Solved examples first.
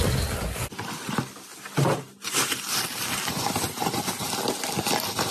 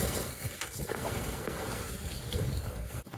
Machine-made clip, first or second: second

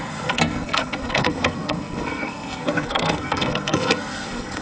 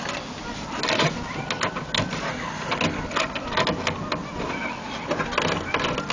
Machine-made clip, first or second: first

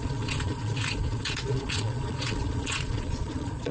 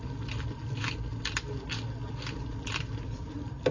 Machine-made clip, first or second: first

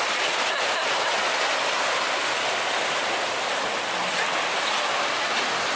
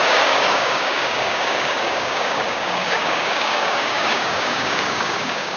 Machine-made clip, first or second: second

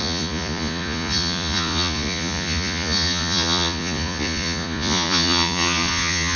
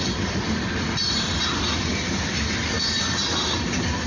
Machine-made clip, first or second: first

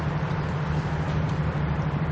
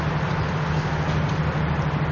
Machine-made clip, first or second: first